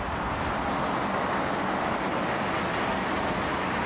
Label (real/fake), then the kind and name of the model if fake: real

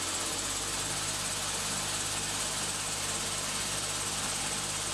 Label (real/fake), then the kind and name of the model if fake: real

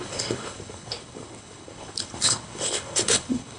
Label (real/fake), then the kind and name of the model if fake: fake, codec, HILCodec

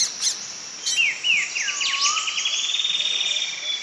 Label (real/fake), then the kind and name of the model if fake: real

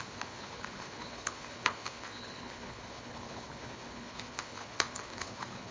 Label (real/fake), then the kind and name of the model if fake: fake, codec, HILCodec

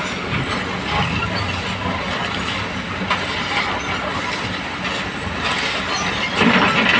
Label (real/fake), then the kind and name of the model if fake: real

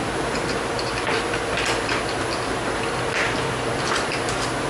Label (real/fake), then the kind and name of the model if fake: real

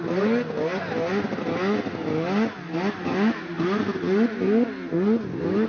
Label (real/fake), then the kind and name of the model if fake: real